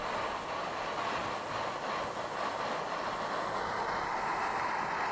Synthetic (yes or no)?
no